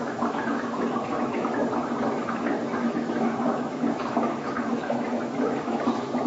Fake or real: fake